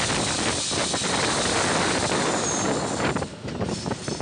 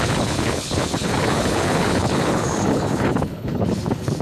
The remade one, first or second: second